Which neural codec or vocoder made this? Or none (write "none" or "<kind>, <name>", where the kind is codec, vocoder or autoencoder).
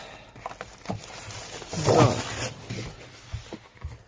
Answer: none